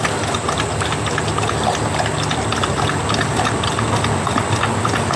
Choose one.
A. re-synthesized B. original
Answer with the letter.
B